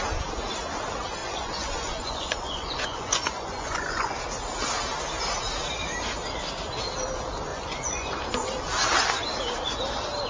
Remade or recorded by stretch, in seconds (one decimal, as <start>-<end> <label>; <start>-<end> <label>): 0.0-1.2 recorded; 1.2-4.2 remade; 4.2-7.5 recorded; 7.5-8.1 remade; 8.1-10.3 recorded